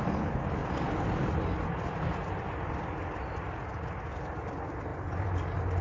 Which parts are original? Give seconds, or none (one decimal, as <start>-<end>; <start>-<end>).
0.0-5.8